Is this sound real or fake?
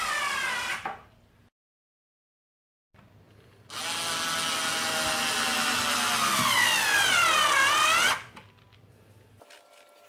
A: real